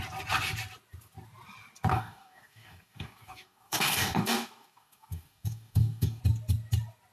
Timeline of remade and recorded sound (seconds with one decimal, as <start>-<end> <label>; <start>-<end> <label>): 0.0-1.9 recorded; 1.9-6.2 remade; 6.2-7.1 recorded